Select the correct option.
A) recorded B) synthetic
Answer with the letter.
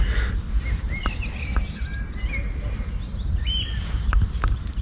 A